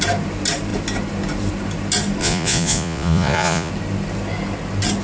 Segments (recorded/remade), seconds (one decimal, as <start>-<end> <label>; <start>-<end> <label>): 0.0-2.2 recorded; 2.2-3.7 remade; 3.7-5.0 recorded